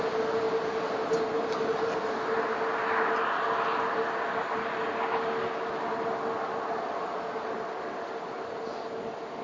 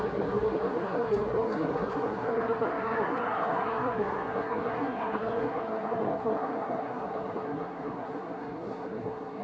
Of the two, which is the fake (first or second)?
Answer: second